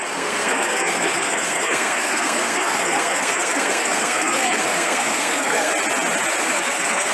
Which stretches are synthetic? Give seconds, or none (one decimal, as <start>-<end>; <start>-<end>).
0.0-5.7; 6.5-7.1